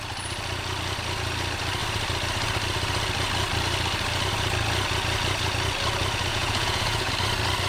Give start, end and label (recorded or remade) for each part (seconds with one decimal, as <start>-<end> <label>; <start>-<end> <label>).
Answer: 0.0-6.3 recorded; 6.3-7.1 remade; 7.1-7.7 recorded